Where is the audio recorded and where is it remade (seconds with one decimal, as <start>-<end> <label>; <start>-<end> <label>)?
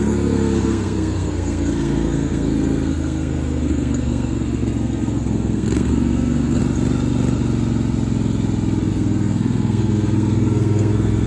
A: 0.0-6.6 remade; 6.6-8.9 recorded; 8.9-11.3 remade